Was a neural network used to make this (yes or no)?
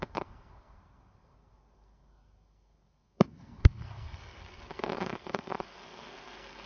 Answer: yes